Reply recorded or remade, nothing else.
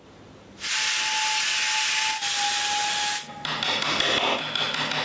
recorded